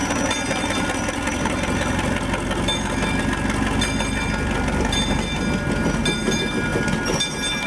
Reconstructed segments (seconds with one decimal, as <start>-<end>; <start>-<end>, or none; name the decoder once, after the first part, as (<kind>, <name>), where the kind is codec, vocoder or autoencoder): none